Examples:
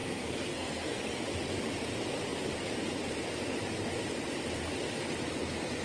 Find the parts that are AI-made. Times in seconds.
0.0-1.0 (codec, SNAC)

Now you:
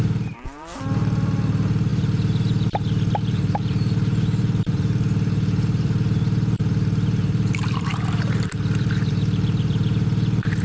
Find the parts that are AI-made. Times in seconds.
0.0-10.6 (vocoder, BigVGAN v2)

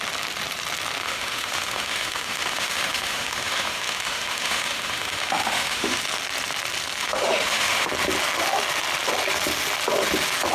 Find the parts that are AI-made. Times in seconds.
1.0-6.0 (autoencoder, DAC-VAE); 7.0-7.9